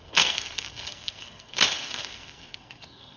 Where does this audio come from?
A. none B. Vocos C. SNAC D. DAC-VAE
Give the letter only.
C